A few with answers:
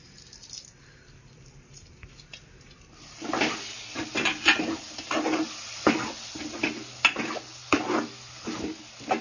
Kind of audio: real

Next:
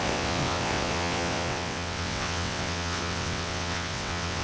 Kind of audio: fake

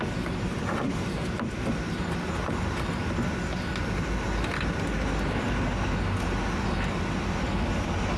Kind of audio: real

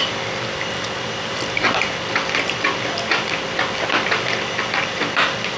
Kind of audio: fake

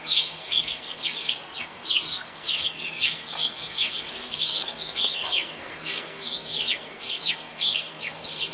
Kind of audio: fake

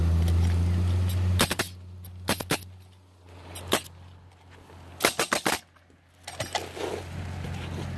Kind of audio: real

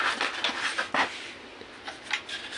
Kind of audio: real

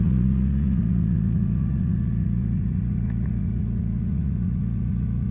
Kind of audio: fake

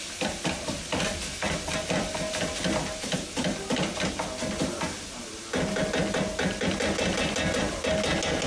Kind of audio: real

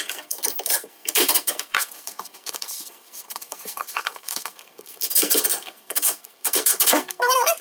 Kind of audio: fake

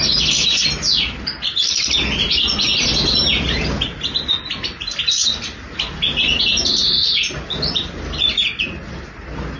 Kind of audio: real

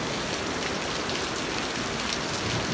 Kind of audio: real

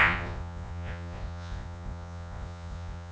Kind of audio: fake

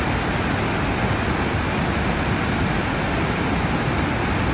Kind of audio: real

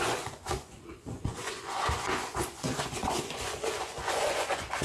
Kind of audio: fake